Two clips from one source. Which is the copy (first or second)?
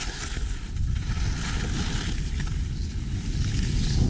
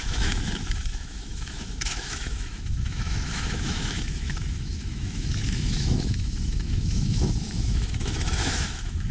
second